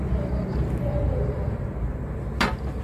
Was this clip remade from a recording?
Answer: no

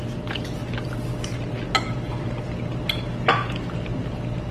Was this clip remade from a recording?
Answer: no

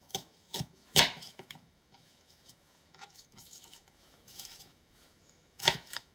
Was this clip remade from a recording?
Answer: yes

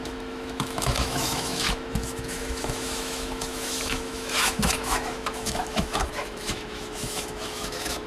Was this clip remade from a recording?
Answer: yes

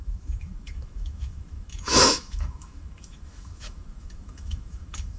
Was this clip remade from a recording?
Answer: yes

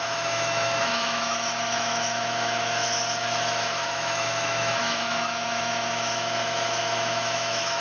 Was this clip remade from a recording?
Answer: yes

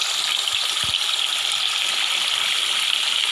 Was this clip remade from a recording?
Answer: no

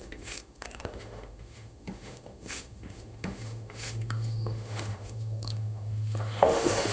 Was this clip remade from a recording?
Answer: yes